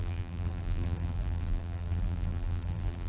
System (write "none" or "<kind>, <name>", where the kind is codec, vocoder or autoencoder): vocoder, BigVGAN v2